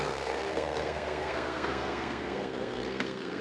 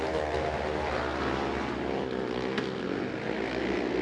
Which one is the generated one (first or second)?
first